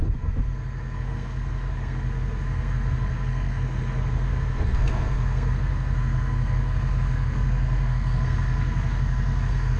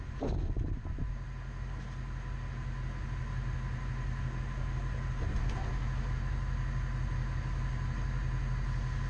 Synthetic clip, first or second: first